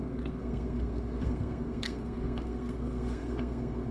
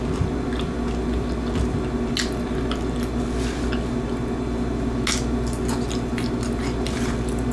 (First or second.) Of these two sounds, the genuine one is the second